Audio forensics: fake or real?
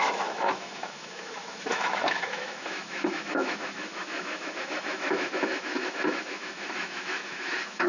fake